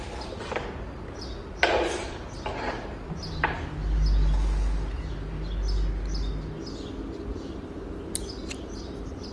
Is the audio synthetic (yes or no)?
no